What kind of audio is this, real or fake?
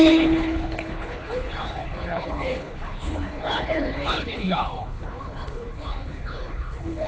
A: fake